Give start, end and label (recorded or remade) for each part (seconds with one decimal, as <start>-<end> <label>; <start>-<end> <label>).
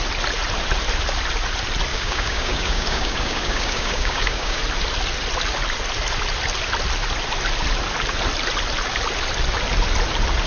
0.0-1.9 recorded; 1.9-4.6 remade; 4.6-10.5 recorded